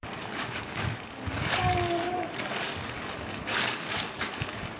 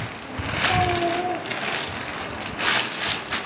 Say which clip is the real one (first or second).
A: second